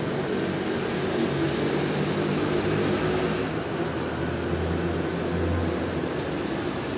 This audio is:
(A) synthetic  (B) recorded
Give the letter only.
B